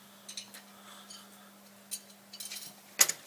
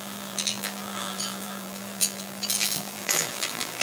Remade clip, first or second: second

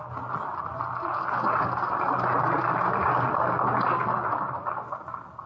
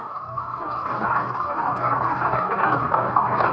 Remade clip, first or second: second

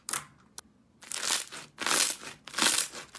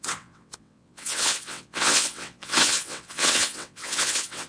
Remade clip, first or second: second